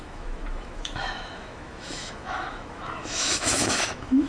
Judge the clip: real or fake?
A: fake